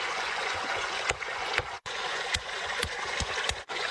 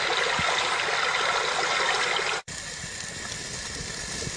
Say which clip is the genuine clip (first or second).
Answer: second